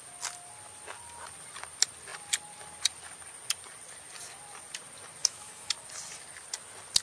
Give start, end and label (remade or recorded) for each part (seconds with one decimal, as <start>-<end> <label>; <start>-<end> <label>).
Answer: 0.0-5.2 recorded; 5.2-5.7 remade; 5.7-7.0 recorded